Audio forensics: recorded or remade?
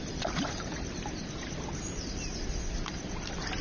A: recorded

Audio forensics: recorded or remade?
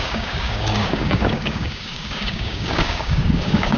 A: remade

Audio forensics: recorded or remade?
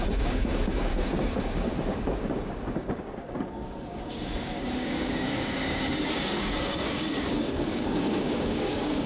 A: remade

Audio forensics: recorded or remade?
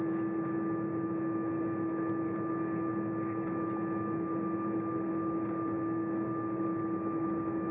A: recorded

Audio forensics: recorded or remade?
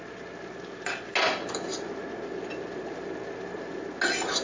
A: recorded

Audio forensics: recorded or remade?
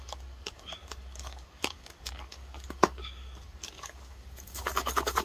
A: remade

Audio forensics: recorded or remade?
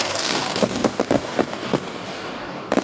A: remade